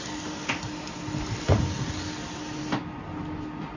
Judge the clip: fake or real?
real